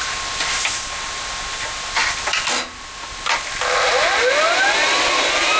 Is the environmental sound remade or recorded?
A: recorded